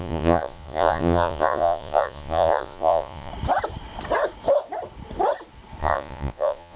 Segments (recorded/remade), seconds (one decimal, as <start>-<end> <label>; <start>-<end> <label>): 0.0-3.3 remade; 3.3-5.8 recorded; 5.8-6.8 remade